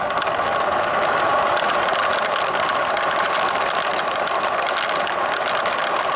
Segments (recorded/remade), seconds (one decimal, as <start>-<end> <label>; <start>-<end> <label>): 0.0-1.3 recorded; 1.3-4.8 remade; 4.8-6.2 recorded